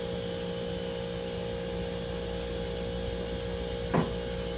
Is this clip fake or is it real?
real